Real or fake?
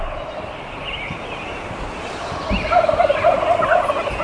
real